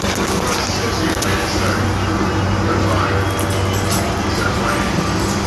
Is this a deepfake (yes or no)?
yes